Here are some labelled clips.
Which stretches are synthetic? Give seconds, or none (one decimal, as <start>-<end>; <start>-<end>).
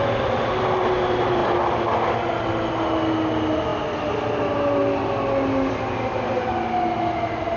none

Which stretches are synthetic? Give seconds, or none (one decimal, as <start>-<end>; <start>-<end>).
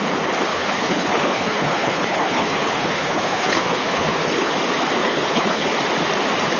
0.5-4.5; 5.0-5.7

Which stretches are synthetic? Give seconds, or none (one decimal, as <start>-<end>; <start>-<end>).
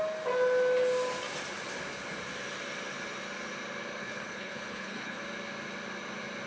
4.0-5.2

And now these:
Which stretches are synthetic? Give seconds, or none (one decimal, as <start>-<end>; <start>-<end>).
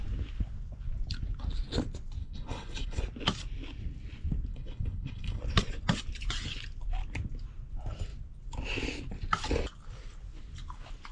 2.2-3.0; 4.5-5.4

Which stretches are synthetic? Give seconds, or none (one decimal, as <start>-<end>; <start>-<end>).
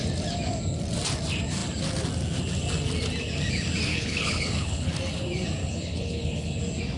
3.9-4.9; 5.6-6.6